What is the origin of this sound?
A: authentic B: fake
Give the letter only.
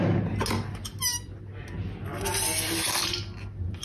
A